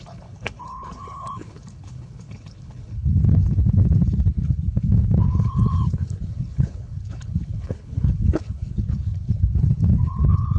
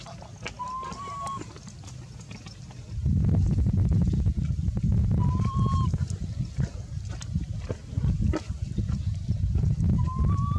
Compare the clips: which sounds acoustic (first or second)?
second